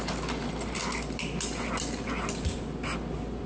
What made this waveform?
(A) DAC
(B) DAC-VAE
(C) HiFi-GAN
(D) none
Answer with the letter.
D